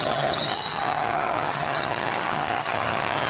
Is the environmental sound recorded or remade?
remade